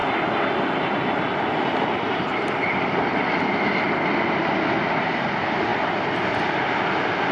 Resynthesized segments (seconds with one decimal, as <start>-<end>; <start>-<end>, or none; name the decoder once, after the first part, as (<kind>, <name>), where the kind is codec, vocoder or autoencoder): none